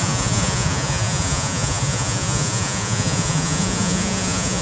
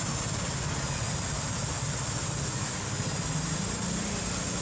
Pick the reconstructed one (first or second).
first